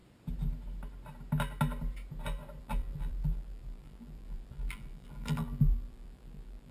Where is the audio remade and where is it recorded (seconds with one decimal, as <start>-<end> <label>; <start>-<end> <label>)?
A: 0.0-2.6 recorded; 2.6-6.7 remade